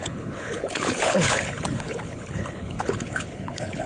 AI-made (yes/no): yes